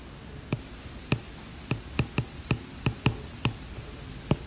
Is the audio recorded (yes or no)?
yes